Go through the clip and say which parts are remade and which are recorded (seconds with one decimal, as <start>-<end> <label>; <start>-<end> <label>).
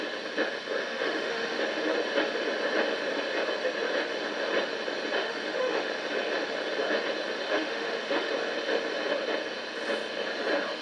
0.0-0.8 recorded; 0.8-1.6 remade; 1.6-5.2 recorded; 5.2-5.8 remade; 5.8-7.5 recorded; 7.5-8.3 remade; 8.3-10.8 recorded